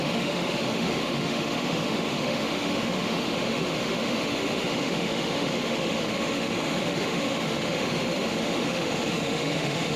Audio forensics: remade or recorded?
remade